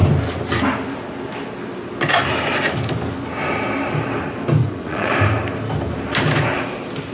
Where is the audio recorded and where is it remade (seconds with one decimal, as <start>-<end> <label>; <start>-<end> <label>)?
0.0-4.6 recorded; 4.6-5.1 remade; 5.1-7.1 recorded